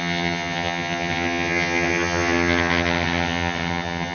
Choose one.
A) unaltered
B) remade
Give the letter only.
B